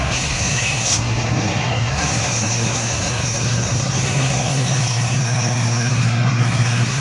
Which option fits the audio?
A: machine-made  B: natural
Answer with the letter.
A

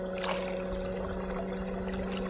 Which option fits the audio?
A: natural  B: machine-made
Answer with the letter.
A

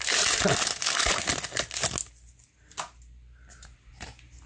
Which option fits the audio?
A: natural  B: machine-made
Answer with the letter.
A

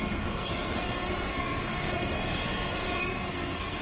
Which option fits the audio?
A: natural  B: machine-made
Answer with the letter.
B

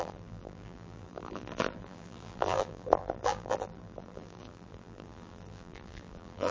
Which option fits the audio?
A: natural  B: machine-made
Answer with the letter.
B